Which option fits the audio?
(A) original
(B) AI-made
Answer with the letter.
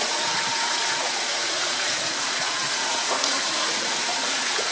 B